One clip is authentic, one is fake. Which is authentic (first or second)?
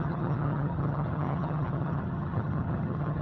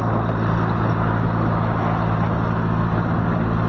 second